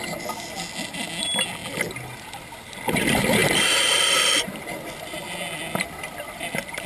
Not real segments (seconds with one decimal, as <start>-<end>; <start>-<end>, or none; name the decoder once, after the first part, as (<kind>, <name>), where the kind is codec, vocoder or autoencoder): none